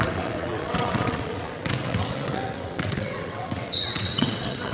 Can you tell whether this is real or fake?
fake